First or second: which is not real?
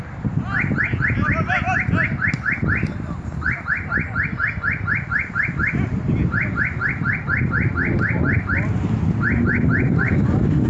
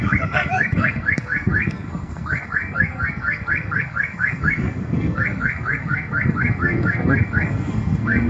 second